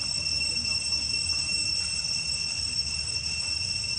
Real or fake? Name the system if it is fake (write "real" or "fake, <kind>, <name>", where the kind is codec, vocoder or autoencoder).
real